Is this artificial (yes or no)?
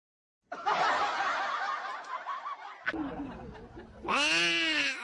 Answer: no